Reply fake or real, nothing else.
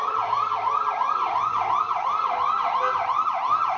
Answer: fake